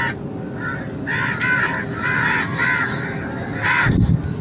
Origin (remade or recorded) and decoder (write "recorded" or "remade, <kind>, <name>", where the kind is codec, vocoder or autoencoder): recorded